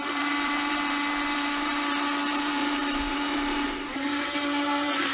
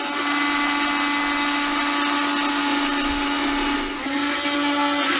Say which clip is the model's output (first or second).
first